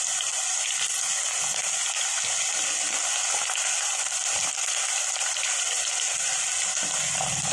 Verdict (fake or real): real